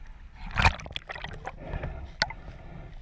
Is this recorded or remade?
recorded